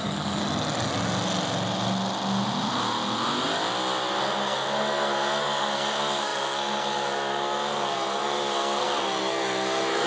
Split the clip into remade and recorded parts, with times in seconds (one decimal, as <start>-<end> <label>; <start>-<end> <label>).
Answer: 0.0-0.4 remade; 0.4-4.2 recorded; 4.2-10.1 remade